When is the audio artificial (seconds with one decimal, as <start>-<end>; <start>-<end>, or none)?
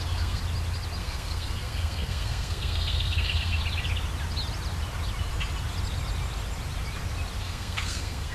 0.0-0.4; 1.0-3.6; 7.4-8.3